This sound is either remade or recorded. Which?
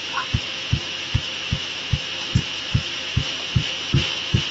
remade